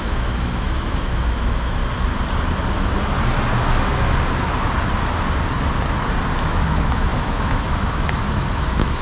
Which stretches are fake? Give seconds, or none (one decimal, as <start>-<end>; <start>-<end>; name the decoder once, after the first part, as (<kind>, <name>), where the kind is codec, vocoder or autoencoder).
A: 0.0-1.8 (autoencoder, DAC-VAE); 6.4-9.0